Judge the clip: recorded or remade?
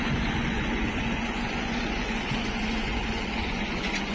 remade